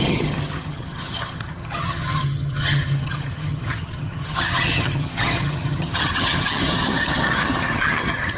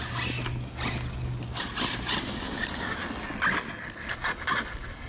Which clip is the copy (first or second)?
first